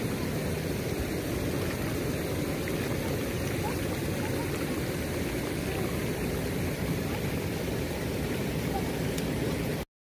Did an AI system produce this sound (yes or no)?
no